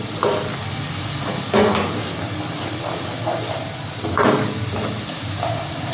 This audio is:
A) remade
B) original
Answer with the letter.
B